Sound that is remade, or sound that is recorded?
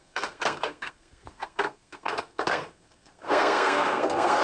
remade